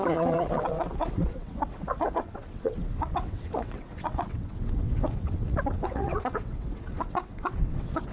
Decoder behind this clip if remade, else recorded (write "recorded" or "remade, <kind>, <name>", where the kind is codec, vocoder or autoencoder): remade, vocoder, WaveNeXt